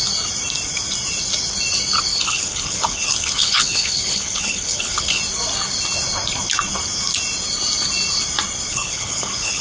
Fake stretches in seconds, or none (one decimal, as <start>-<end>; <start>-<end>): 2.1-5.2; 8.7-9.6